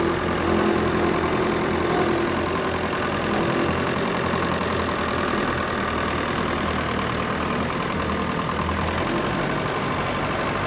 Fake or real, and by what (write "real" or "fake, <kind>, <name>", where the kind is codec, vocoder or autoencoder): real